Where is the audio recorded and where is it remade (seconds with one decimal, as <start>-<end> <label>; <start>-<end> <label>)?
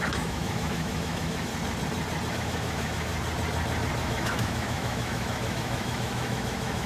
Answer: 0.0-1.5 remade; 1.5-2.3 recorded; 2.3-3.1 remade; 3.1-4.0 recorded; 4.0-6.9 remade